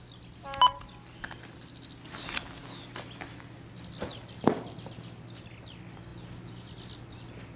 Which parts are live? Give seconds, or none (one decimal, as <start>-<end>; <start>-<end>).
0.0-7.6